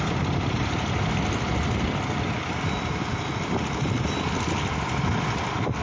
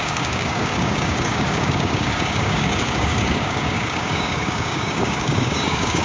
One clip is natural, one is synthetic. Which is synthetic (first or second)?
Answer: second